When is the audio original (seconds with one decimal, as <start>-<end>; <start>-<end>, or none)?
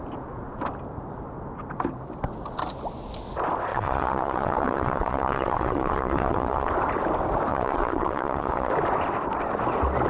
0.0-3.7; 6.7-7.5; 8.7-10.1